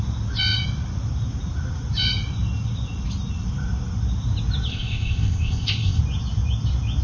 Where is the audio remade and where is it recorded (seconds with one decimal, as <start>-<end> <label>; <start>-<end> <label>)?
0.0-4.7 recorded; 4.7-6.0 remade; 6.0-7.0 recorded